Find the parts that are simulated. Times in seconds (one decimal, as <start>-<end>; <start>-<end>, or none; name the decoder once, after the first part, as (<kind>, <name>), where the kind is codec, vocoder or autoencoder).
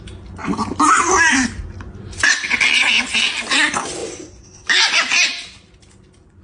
0.4-1.3 (vocoder, BigVGAN v2); 4.0-4.9